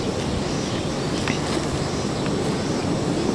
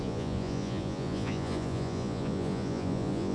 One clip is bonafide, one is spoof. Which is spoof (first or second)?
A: second